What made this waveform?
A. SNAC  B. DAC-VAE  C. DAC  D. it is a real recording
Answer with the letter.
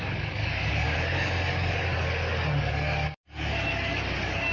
C